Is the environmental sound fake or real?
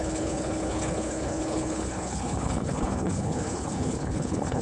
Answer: fake